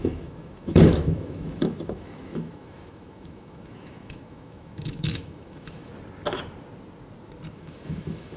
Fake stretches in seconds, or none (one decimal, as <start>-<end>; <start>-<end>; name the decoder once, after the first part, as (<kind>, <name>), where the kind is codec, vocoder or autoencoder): 0.0-5.9 (autoencoder, DAC-VAE); 7.5-8.4